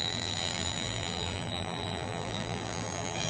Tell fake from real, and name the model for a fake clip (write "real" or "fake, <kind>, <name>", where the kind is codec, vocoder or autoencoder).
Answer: fake, vocoder, BigVGAN v2